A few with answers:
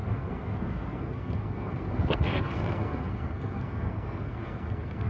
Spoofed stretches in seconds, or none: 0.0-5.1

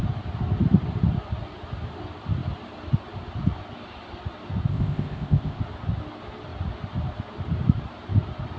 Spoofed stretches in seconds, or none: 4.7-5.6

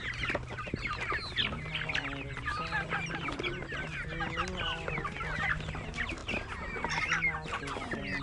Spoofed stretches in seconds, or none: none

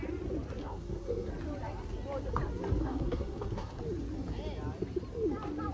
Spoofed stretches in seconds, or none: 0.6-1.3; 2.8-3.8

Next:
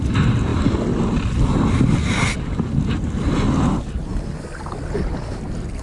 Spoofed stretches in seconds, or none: none

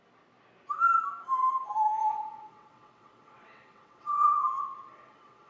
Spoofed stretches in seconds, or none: 2.1-5.5

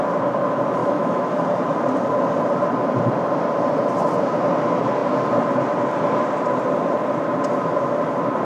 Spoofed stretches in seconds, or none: 0.8-1.4

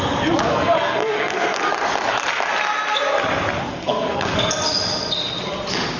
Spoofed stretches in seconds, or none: 0.5-1.7; 3.7-4.5